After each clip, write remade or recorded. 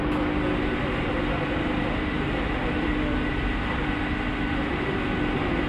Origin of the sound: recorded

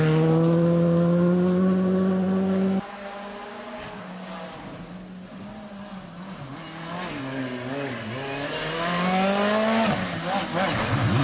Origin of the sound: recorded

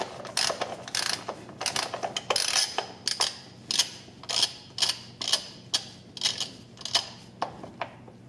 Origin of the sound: recorded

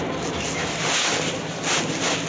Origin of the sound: recorded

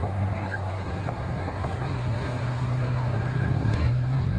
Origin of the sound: remade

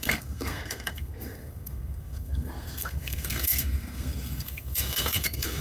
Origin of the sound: remade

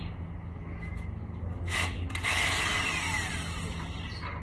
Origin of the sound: recorded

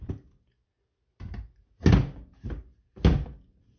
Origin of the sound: recorded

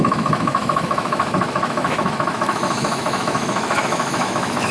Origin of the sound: remade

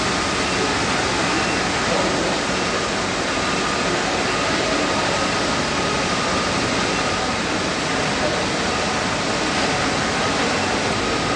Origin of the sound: recorded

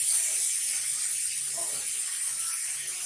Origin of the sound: recorded